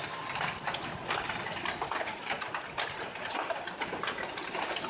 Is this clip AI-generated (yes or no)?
no